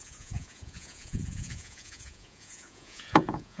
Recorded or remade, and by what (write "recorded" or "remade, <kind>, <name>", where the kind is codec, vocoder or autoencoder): remade, vocoder, Vocos